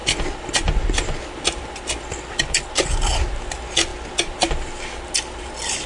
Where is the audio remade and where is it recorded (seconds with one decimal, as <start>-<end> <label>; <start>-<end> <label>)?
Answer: 0.0-5.9 recorded